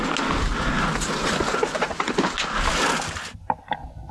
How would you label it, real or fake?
real